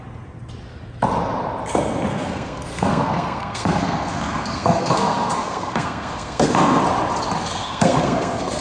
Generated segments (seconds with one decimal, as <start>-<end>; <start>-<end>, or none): 2.1-6.8; 7.4-8.6